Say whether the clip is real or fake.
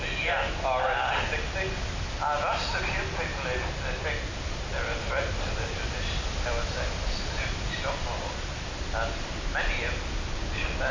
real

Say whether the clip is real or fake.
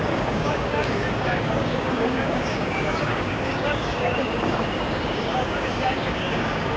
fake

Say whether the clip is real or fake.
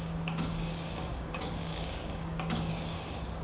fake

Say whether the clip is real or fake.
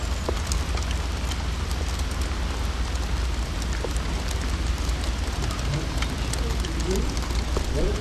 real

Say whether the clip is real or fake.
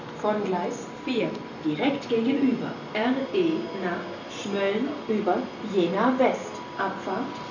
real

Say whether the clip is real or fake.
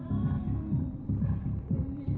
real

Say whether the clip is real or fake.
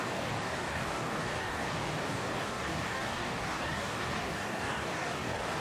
fake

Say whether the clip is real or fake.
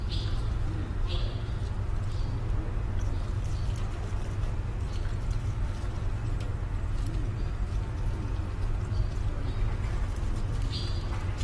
real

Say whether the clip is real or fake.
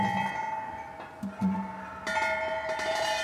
real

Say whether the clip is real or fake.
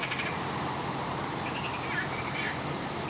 real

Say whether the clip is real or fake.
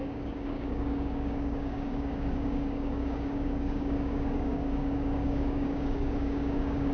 fake